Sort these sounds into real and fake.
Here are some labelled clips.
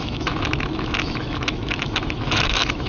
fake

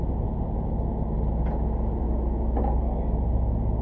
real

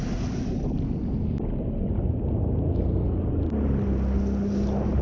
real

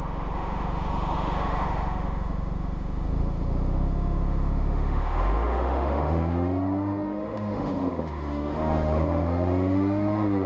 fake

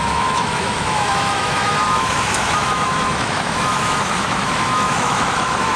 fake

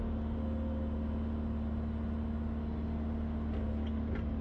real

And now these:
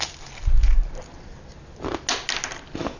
real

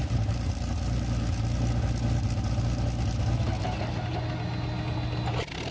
real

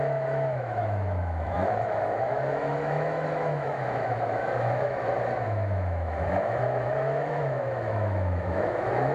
fake